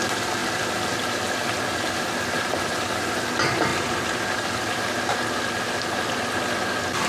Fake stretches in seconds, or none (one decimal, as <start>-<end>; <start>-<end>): 0.4-3.1; 3.7-5.6

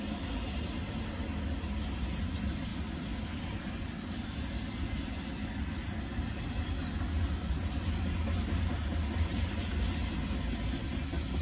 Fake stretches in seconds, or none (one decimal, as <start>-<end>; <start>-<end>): none

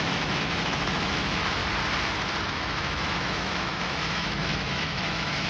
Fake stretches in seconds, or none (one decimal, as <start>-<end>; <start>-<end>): 0.0-1.6; 2.4-5.5